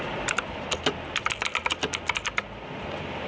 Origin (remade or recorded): recorded